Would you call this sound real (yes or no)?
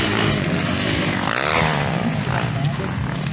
yes